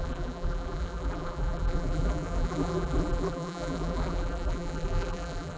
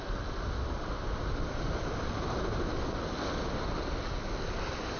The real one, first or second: second